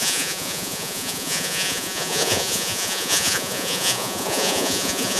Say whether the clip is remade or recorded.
remade